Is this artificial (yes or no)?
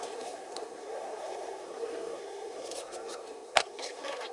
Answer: yes